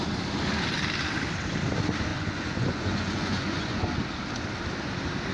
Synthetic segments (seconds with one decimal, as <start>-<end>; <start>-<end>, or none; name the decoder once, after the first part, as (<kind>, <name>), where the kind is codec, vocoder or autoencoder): 2.1-3.8 (vocoder, Vocos)